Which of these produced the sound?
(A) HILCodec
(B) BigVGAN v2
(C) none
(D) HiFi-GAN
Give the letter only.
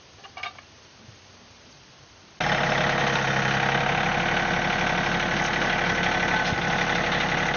C